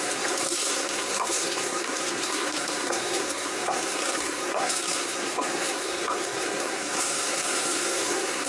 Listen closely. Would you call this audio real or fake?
fake